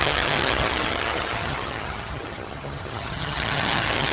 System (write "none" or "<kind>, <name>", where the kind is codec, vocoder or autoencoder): vocoder, HiFi-GAN